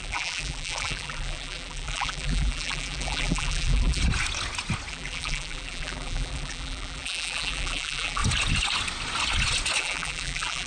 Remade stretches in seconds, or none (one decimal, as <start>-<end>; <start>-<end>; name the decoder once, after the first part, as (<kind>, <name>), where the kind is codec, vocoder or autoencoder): 0.0-4.0 (vocoder, BigVGAN v2); 4.9-8.2; 9.8-10.7